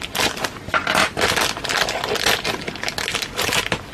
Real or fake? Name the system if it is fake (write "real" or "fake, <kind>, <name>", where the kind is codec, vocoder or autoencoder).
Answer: real